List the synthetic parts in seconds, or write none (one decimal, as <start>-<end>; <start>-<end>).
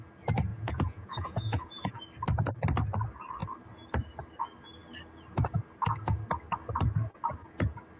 0.5-2.0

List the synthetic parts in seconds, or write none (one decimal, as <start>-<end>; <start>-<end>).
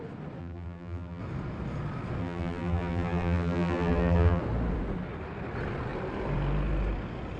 0.4-1.2; 2.2-4.4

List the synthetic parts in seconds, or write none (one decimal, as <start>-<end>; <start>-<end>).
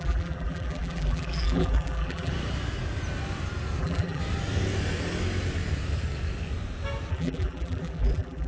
0.0-2.3; 3.8-4.2; 7.1-8.5